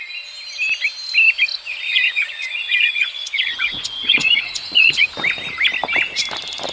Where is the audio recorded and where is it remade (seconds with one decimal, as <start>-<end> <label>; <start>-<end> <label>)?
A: 0.0-1.9 recorded; 1.9-5.2 remade; 5.2-6.7 recorded